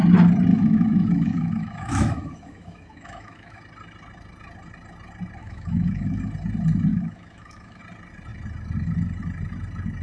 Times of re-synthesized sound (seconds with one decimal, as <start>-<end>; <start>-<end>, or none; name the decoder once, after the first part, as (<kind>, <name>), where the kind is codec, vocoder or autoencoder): 0.5-3.6 (autoencoder, DAC-VAE); 5.4-6.2; 6.9-7.8

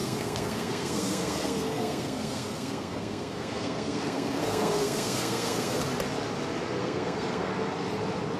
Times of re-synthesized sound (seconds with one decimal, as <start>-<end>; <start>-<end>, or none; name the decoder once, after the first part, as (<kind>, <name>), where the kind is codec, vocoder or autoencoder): 0.0-5.8 (codec, SNAC); 6.8-7.5

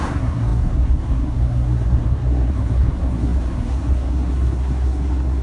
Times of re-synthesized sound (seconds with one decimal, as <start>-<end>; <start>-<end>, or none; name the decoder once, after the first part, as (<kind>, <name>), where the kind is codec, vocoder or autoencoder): 0.0-5.4 (codec, SNAC)